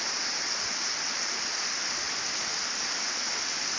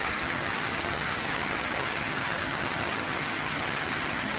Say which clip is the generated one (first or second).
second